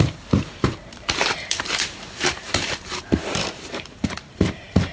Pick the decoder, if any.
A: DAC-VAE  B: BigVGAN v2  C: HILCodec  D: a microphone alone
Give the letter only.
B